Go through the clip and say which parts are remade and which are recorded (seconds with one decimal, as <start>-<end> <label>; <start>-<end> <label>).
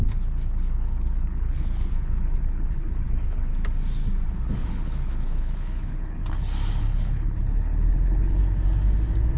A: 0.0-3.5 remade; 3.5-4.3 recorded; 4.3-6.2 remade; 6.2-6.8 recorded; 6.8-8.4 remade; 8.4-9.4 recorded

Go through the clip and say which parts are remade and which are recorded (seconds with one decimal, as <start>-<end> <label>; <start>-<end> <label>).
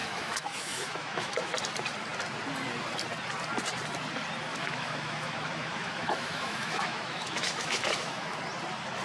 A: 0.0-1.5 remade; 1.5-4.5 recorded; 4.5-8.4 remade; 8.4-9.0 recorded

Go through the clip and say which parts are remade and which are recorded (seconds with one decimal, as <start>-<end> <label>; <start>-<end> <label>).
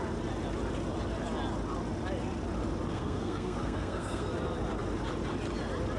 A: 0.0-2.9 recorded; 2.9-4.3 remade; 4.3-6.0 recorded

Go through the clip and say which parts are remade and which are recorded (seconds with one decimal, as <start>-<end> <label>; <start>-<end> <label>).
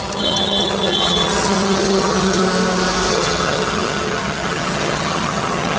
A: 0.0-2.4 remade; 2.4-3.1 recorded; 3.1-5.8 remade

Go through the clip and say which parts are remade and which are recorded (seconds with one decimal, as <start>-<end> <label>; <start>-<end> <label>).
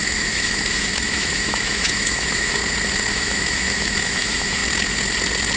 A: 0.0-2.6 remade; 2.6-3.1 recorded; 3.1-4.6 remade; 4.6-5.6 recorded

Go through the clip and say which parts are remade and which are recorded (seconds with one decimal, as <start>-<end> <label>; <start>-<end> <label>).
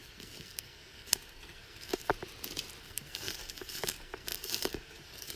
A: 0.0-2.1 remade; 2.1-2.8 recorded; 2.8-5.4 remade